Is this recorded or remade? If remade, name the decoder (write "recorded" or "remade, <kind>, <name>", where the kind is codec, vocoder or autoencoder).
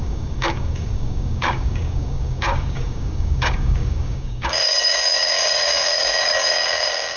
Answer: remade, codec, DAC